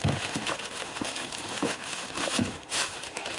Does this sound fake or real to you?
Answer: fake